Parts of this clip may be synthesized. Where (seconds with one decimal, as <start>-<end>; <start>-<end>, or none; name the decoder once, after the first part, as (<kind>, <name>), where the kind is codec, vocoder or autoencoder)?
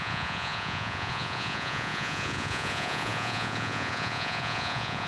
0.0-5.1 (vocoder, Vocos)